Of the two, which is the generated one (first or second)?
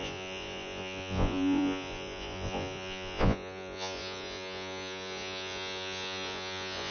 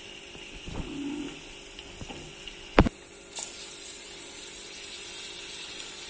first